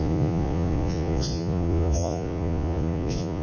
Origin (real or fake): fake